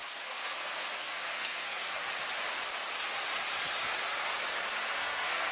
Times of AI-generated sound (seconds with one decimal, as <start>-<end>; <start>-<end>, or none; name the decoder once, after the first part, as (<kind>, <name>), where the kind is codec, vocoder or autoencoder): 0.0-2.0 (codec, SNAC); 4.8-5.5